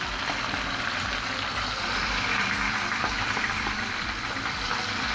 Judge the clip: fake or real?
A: fake